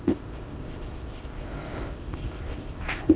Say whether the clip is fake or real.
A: fake